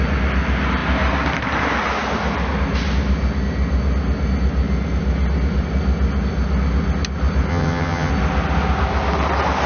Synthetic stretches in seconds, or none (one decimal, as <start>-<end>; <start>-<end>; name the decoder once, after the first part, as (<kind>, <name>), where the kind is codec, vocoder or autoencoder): 7.5-8.1 (vocoder, HiFi-GAN)